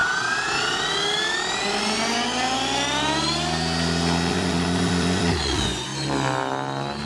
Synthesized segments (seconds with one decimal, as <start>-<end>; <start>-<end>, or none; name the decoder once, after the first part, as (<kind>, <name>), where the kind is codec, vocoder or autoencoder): 4.3-5.9 (vocoder, Vocos)